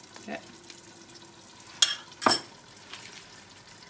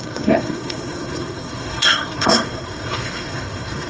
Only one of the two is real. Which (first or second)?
first